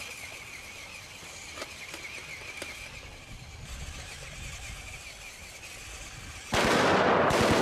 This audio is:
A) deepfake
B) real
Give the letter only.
B